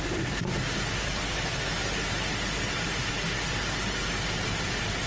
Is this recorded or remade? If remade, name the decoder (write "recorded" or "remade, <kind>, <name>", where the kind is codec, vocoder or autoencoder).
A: recorded